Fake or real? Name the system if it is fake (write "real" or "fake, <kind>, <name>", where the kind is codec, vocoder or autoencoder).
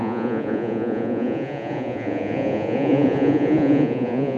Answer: fake, vocoder, Vocos